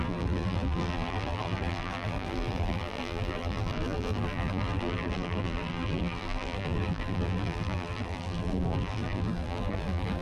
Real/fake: fake